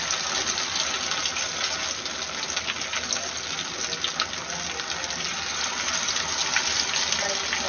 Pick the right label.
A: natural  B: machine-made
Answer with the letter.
A